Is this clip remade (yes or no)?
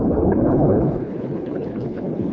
yes